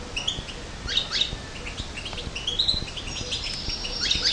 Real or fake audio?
real